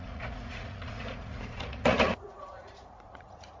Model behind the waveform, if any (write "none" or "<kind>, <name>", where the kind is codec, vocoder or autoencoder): vocoder, Vocos